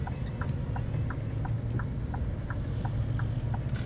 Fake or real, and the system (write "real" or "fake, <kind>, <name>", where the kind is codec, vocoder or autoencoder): real